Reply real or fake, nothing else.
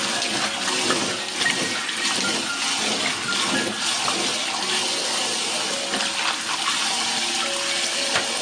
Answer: real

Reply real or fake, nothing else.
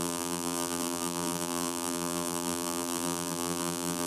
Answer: fake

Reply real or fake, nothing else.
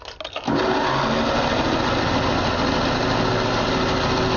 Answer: real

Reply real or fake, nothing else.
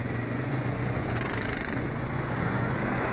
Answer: fake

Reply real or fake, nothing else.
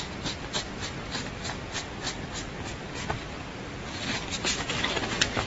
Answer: real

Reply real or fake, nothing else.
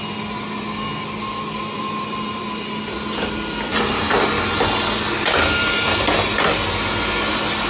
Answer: real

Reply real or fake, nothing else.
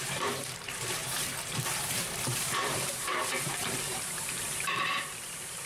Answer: fake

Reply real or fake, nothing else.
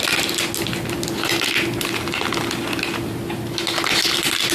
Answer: real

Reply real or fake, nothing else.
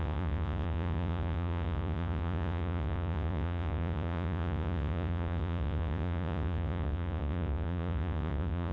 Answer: fake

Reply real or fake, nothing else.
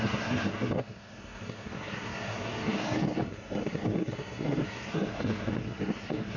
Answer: fake